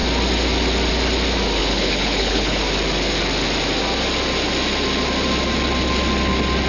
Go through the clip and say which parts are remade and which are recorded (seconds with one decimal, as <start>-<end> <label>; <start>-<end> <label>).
0.0-1.6 recorded; 1.6-2.6 remade; 2.6-6.7 recorded